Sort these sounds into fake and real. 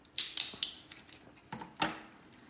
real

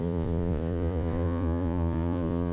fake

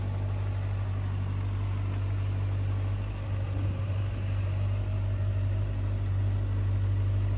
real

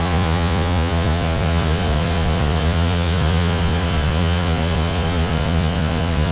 fake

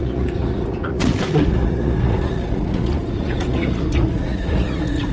fake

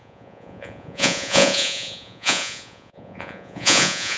fake